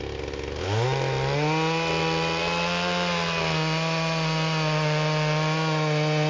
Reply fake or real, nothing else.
real